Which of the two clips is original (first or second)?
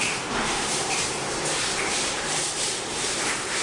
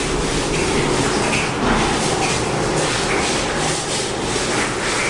second